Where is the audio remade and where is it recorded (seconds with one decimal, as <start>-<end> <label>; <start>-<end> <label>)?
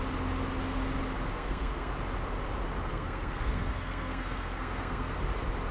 0.0-1.3 recorded; 1.3-1.9 remade; 1.9-2.9 recorded; 2.9-5.2 remade; 5.2-5.7 recorded